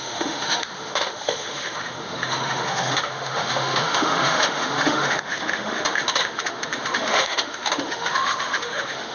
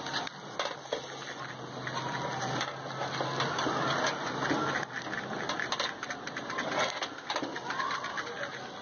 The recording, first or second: second